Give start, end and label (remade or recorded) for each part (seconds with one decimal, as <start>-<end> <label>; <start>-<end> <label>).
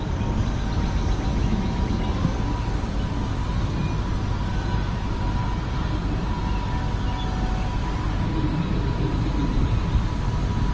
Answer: 0.0-1.3 recorded; 1.3-1.8 remade; 1.8-10.7 recorded